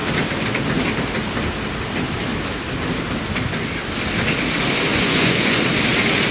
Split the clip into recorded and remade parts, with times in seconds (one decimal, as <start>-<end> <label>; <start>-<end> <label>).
0.0-4.9 recorded; 4.9-5.6 remade; 5.6-6.3 recorded